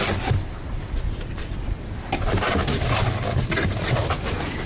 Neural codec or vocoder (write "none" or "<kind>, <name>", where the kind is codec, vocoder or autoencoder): none